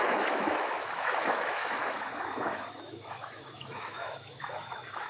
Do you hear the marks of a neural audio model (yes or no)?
yes